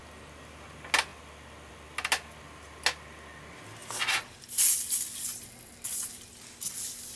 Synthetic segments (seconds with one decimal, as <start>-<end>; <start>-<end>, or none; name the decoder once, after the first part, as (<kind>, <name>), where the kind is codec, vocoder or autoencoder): none